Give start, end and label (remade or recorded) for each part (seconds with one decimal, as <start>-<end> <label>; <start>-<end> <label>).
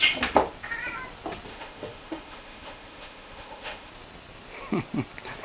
0.0-1.5 recorded; 1.5-3.9 remade; 3.9-5.4 recorded